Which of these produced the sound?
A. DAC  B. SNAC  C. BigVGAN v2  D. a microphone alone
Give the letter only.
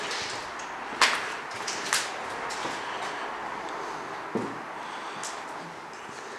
D